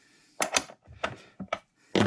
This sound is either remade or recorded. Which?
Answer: recorded